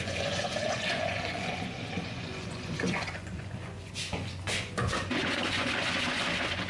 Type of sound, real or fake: fake